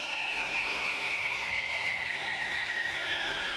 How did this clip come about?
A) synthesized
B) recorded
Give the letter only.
A